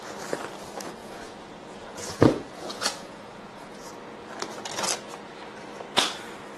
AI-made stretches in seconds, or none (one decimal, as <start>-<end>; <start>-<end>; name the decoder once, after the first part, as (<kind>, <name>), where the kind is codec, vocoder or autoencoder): 1.0-3.9 (vocoder, Vocos)